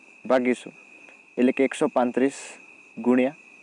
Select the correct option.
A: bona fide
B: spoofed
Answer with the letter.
A